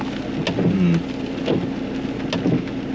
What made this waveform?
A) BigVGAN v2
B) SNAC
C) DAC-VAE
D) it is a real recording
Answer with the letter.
D